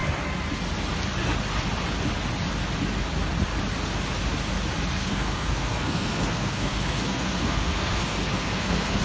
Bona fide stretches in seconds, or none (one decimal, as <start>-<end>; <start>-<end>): 0.0-4.9